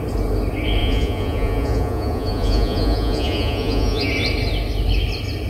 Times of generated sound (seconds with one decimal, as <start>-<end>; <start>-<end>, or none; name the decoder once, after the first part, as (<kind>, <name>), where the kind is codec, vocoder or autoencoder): 0.8-4.1 (vocoder, Vocos)